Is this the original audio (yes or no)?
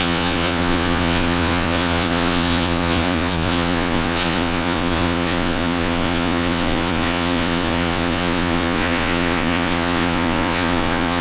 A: no